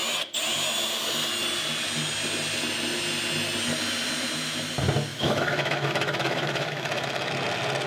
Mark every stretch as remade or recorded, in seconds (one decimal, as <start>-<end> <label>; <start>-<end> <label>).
0.0-5.1 recorded; 5.1-7.3 remade; 7.3-7.9 recorded